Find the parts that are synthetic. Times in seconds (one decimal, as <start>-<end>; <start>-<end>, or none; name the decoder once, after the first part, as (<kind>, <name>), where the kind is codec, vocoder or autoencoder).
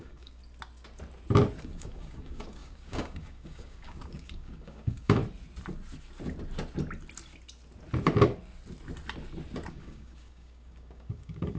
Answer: 0.0-0.4 (codec, DAC); 1.6-5.2; 9.7-11.6